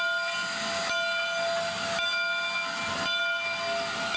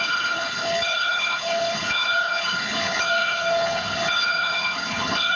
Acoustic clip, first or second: first